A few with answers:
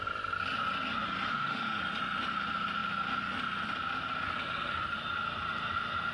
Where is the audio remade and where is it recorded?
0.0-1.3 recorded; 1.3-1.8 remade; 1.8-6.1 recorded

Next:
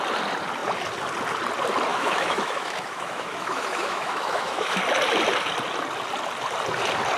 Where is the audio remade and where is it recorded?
0.0-1.9 recorded; 1.9-4.8 remade; 4.8-7.2 recorded

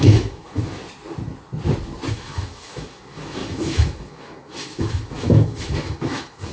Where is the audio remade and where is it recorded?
0.0-0.8 remade; 0.8-2.1 recorded; 2.1-6.5 remade

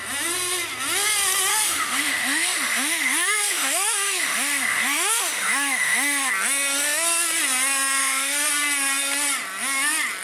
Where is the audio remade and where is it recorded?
0.0-1.5 recorded; 1.5-6.3 remade; 6.3-8.0 recorded; 8.0-8.5 remade; 8.5-10.2 recorded

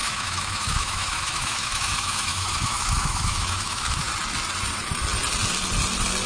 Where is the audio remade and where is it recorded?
0.0-4.1 remade; 4.1-6.3 recorded

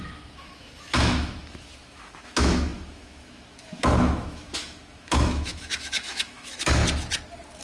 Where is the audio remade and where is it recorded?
0.0-6.8 remade; 6.8-7.6 recorded